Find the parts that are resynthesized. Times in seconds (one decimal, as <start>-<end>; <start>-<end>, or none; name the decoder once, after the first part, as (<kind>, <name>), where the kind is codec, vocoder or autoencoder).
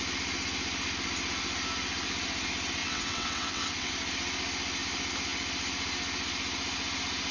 2.8-3.9 (vocoder, WaveNeXt)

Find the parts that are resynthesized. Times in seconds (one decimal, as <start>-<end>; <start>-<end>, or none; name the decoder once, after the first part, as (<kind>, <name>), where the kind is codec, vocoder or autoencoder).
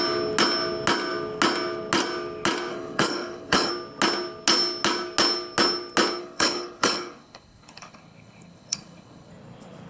2.7-3.7 (codec, HILCodec); 6.2-9.3